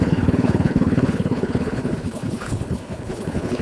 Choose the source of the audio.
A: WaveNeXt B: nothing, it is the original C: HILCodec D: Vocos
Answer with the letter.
C